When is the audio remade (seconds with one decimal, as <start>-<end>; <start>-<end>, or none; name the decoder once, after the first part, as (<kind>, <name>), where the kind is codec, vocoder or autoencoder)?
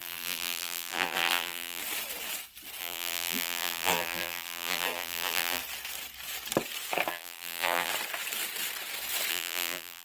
0.0-1.8 (vocoder, BigVGAN v2); 2.8-5.6; 7.1-7.9; 9.3-10.0